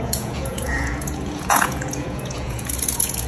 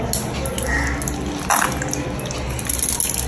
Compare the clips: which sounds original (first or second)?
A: second